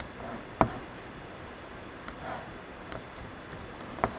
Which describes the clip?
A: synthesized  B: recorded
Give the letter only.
A